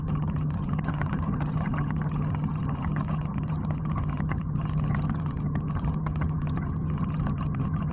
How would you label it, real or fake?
fake